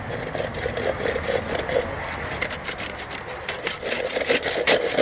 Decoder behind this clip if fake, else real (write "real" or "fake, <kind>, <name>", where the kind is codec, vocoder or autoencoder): real